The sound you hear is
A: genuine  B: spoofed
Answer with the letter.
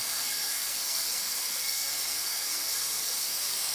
B